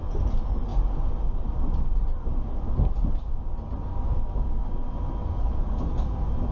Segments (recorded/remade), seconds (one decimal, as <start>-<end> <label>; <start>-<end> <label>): 0.0-5.2 recorded; 5.2-5.8 remade; 5.8-6.5 recorded